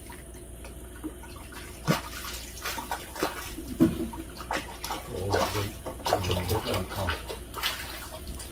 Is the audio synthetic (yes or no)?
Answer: no